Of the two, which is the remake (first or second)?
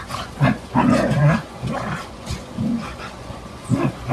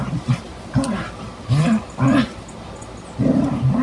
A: first